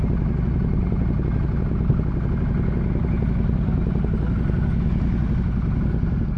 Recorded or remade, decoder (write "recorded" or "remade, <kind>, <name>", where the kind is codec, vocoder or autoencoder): recorded